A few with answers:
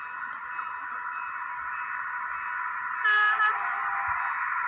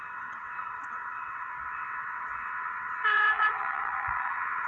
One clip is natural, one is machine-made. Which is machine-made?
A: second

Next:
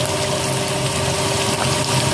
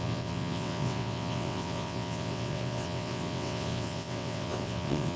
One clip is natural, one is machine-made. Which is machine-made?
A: second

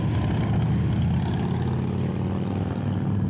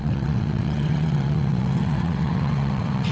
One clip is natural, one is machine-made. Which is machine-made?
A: second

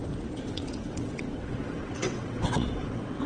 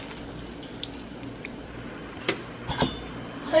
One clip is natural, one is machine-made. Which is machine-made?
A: first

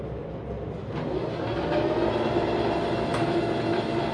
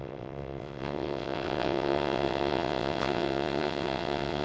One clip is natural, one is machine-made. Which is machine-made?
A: second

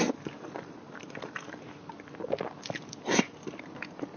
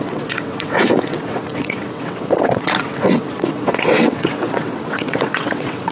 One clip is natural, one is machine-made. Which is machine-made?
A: second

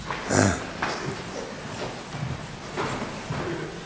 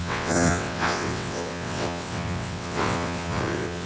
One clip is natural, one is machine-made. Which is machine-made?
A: second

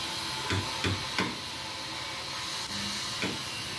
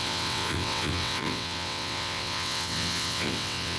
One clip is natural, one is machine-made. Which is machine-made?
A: second